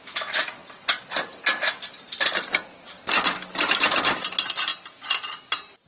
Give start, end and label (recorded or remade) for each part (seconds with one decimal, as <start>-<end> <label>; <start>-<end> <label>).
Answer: 0.0-5.9 recorded